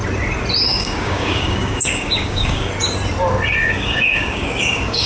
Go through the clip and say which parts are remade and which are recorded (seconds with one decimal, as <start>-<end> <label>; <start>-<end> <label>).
0.0-0.7 recorded; 0.7-2.7 remade; 2.7-3.6 recorded; 3.6-5.1 remade